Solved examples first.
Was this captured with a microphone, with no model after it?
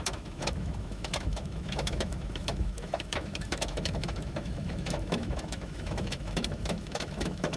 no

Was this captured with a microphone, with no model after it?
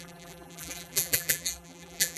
no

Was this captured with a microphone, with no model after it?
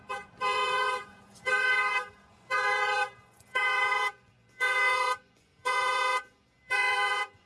no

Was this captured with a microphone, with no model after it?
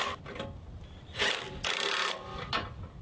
yes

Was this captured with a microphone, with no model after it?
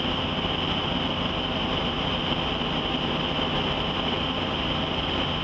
yes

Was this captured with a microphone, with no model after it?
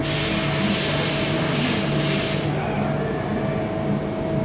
yes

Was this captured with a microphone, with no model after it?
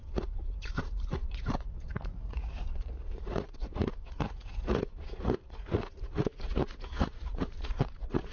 no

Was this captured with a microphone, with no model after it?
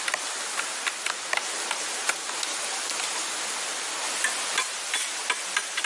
yes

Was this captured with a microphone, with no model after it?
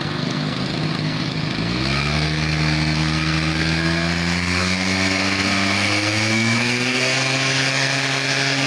no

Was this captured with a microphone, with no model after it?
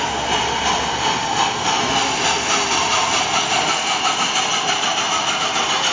yes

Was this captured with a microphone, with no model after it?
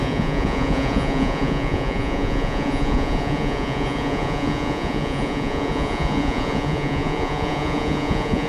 no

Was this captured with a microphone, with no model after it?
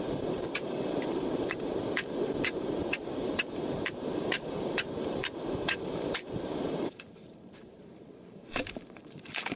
no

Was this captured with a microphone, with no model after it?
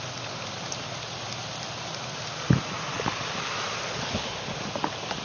no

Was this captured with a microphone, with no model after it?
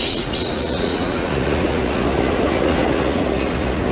no